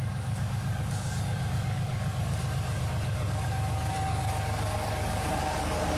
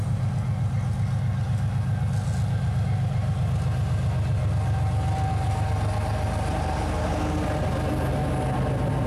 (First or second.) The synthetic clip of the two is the first